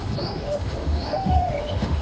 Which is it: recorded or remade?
remade